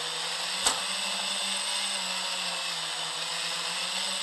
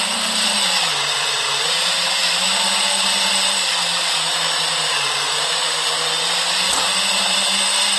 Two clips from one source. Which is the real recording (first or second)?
first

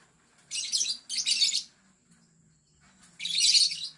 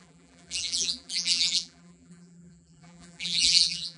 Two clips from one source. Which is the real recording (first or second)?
first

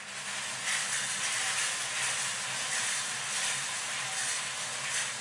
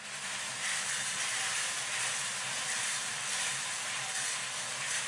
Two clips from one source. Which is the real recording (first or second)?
first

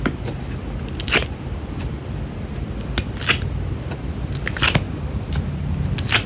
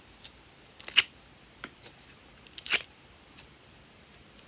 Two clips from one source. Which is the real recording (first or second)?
first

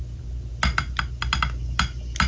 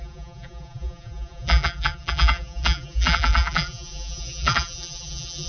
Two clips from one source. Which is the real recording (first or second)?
first